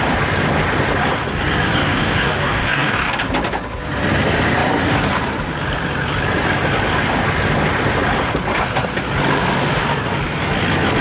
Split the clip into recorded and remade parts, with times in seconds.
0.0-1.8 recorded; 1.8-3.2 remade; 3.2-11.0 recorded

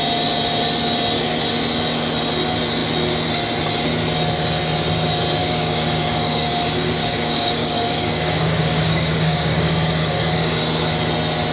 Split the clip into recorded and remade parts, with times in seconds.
0.0-5.4 recorded; 5.4-6.5 remade; 6.5-7.0 recorded; 7.0-10.6 remade; 10.6-11.5 recorded

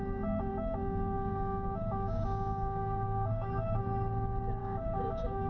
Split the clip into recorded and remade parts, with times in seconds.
0.0-0.5 recorded; 0.5-3.8 remade; 3.8-4.6 recorded; 4.6-5.5 remade

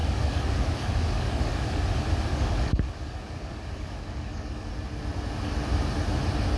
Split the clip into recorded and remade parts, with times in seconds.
0.0-1.8 remade; 1.8-2.3 recorded; 2.3-4.7 remade; 4.7-6.6 recorded

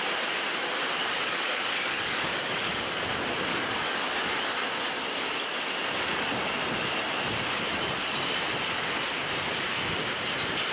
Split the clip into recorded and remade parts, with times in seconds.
0.0-1.0 recorded; 1.0-3.0 remade; 3.0-3.5 recorded; 3.5-4.1 remade; 4.1-10.7 recorded

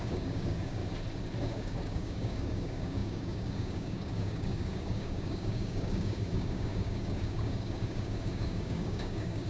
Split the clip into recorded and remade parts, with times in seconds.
0.0-0.8 remade; 0.8-1.4 recorded; 1.4-9.5 remade